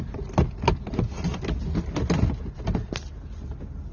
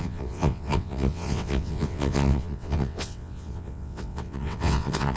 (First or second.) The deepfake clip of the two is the second